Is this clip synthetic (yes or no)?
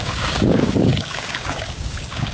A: yes